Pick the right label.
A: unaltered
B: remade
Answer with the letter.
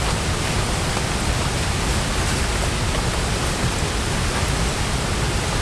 A